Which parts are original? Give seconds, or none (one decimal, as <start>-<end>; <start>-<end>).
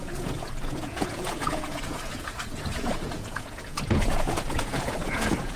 none